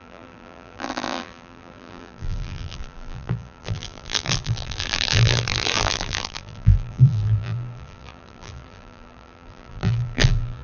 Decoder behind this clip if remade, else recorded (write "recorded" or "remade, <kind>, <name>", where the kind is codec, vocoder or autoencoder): remade, vocoder, BigVGAN v2